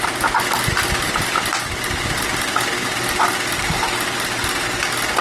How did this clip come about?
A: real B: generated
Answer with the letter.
A